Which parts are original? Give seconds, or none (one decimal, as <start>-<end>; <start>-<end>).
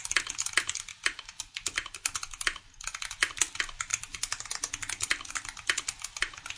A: 0.0-6.6